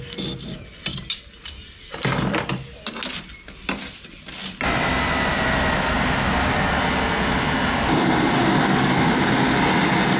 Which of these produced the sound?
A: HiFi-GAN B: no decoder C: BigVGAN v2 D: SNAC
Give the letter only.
B